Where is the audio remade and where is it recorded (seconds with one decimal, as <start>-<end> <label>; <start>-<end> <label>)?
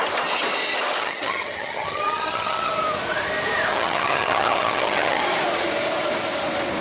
0.0-1.0 recorded; 1.0-2.7 remade; 2.7-3.7 recorded; 3.7-5.2 remade; 5.2-6.8 recorded